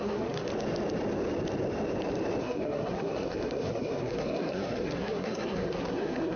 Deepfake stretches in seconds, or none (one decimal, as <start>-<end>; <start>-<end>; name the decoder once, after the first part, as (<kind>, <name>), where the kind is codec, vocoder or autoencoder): 0.0-0.5 (codec, SNAC); 2.4-6.4